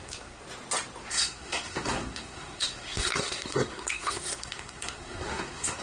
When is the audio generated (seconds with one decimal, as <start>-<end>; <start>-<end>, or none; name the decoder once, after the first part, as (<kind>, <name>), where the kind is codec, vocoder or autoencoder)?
0.0-0.4 (codec, SNAC); 1.1-5.8